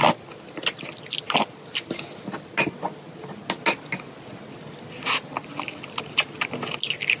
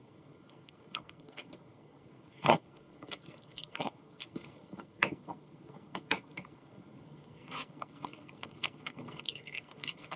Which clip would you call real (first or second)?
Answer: first